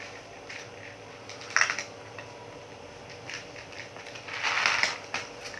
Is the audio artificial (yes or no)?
yes